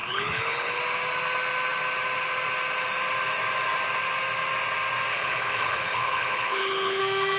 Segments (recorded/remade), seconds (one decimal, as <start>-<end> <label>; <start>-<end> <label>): 0.0-0.8 remade; 0.8-5.1 recorded; 5.1-7.0 remade; 7.0-7.4 recorded